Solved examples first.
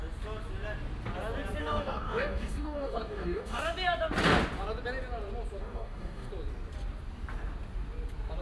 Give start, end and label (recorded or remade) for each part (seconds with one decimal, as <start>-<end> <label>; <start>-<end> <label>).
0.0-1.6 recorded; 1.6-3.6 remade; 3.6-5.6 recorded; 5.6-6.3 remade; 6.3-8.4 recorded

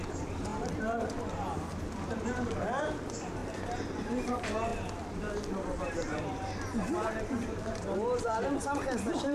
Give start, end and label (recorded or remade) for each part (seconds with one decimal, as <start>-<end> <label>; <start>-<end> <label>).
0.0-3.4 remade; 3.4-4.0 recorded; 4.0-4.7 remade; 4.7-5.4 recorded; 5.4-9.3 remade

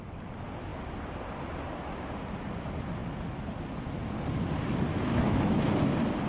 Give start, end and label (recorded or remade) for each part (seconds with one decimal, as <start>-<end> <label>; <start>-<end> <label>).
0.0-4.9 recorded; 4.9-5.6 remade; 5.6-6.3 recorded